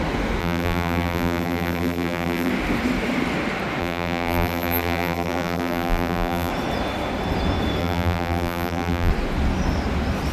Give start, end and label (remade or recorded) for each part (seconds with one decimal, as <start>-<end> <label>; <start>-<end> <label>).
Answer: 0.0-0.4 recorded; 0.4-2.5 remade; 2.5-3.8 recorded; 3.8-6.5 remade; 6.5-7.8 recorded; 7.8-9.1 remade; 9.1-10.3 recorded